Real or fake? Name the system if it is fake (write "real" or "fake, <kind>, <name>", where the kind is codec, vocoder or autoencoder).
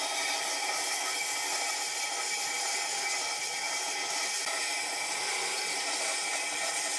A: real